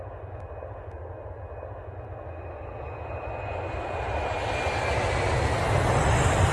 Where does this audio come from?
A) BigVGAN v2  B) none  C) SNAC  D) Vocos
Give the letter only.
B